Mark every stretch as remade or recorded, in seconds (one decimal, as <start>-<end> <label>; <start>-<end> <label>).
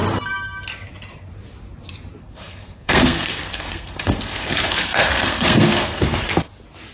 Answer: 0.0-2.2 recorded; 2.2-6.3 remade; 6.3-6.9 recorded